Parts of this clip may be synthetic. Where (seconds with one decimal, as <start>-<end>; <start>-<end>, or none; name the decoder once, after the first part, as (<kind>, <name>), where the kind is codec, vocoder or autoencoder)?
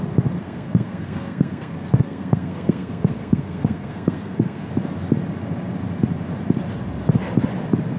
0.4-4.7 (codec, SNAC)